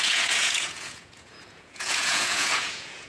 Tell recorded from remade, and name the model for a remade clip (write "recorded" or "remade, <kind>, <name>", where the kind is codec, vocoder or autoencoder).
remade, vocoder, Vocos